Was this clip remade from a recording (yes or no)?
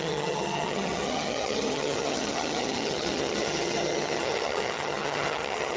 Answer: yes